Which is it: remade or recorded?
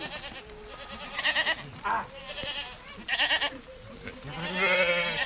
recorded